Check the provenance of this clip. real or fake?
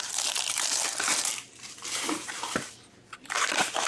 fake